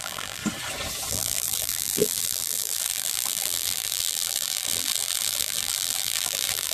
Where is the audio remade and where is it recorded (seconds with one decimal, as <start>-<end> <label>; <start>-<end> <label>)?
0.0-0.4 remade; 0.4-1.1 recorded; 1.1-6.7 remade